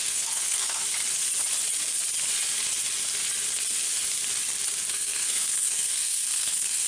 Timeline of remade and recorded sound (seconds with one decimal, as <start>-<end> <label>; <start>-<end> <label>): 0.0-0.8 remade; 0.8-4.9 recorded; 4.9-6.9 remade